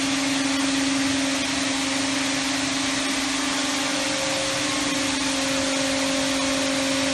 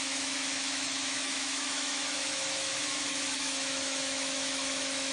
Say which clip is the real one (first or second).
first